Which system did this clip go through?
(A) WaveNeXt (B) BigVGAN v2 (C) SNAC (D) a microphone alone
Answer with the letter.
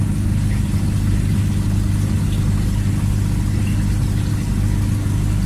D